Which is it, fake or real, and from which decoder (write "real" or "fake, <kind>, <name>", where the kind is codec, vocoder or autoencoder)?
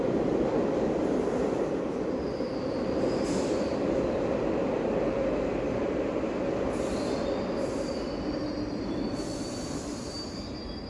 real